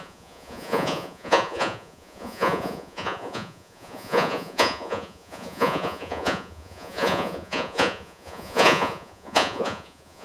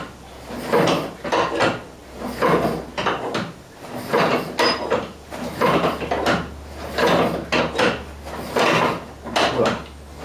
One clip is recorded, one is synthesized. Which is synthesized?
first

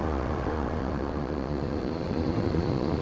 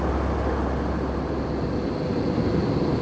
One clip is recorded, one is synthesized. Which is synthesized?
first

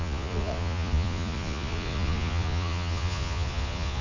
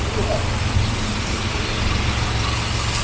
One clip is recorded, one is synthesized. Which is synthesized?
first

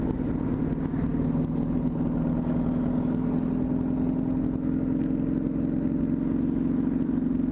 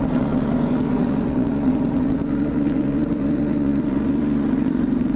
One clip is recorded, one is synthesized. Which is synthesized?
second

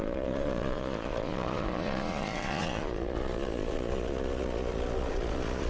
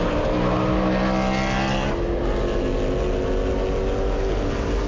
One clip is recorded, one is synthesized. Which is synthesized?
first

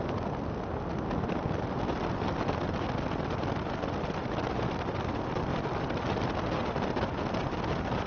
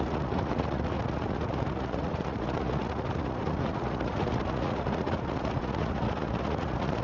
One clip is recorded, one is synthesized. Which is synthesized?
second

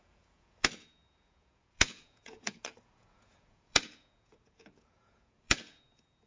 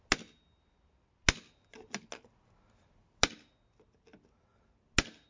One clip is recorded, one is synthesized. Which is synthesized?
first